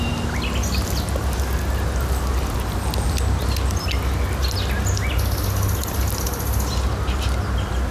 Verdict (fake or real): real